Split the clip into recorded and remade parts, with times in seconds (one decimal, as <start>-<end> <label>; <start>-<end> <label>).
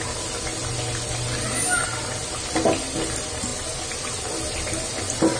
0.0-5.4 recorded